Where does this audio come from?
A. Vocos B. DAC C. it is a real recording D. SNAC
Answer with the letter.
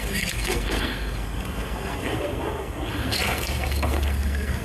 D